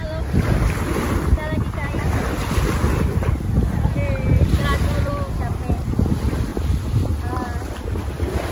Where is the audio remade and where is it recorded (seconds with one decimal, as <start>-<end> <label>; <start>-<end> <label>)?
0.0-4.3 recorded; 4.3-5.1 remade; 5.1-6.5 recorded; 6.5-8.5 remade